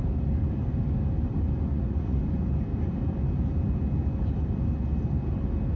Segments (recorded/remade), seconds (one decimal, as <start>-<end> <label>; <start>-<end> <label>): 0.0-1.7 recorded; 1.7-2.2 remade; 2.2-5.8 recorded